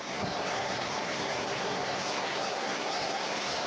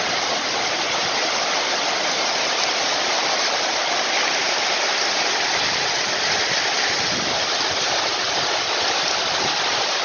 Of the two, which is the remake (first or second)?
first